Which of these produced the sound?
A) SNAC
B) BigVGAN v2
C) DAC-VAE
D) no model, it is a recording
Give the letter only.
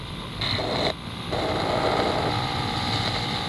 D